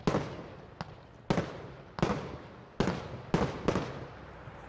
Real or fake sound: real